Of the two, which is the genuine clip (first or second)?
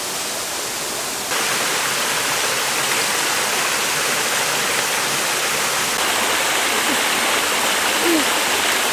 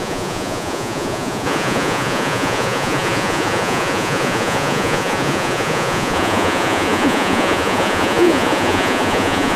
first